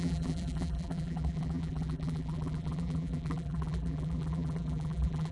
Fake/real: fake